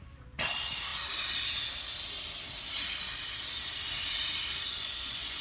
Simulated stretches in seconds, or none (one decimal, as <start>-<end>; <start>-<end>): 4.7-5.4